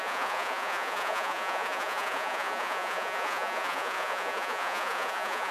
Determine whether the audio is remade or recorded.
remade